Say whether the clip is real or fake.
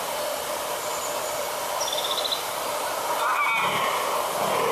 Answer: real